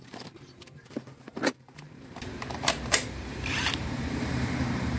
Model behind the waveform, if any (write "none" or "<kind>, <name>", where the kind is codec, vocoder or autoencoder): vocoder, BigVGAN v2